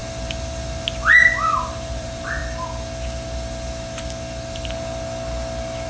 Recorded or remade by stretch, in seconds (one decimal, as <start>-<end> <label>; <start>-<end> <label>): 0.0-1.4 recorded; 1.4-2.4 remade; 2.4-5.9 recorded